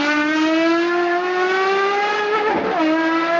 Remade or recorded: recorded